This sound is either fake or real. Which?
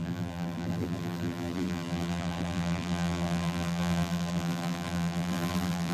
fake